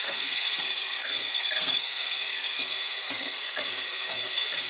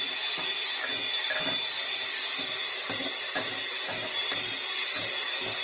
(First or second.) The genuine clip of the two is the second